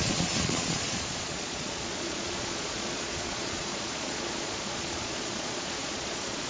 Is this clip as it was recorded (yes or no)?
no